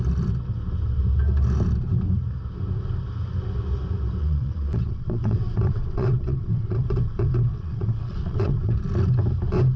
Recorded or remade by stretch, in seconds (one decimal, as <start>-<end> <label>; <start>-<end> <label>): 0.0-4.2 recorded; 4.2-8.8 remade; 8.8-9.8 recorded